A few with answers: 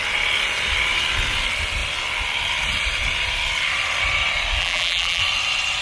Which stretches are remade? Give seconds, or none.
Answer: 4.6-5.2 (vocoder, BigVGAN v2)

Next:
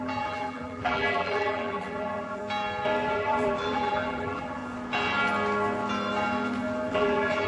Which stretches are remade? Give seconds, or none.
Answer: 0.0-2.4 (vocoder, BigVGAN v2); 3.1-4.6; 6.9-7.5

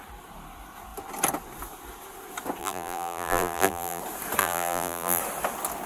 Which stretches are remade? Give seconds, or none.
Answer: 2.6-4.0 (vocoder, BigVGAN v2); 4.4-5.2

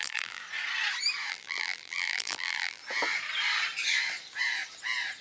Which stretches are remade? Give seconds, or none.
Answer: 0.0-0.4 (vocoder, BigVGAN v2); 1.3-2.8